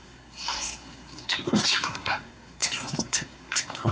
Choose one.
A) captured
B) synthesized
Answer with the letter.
B